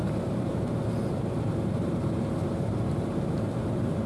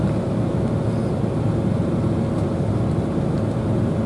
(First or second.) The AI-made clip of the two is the first